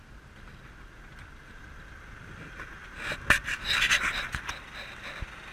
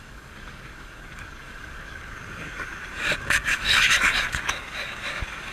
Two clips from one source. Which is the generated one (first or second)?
second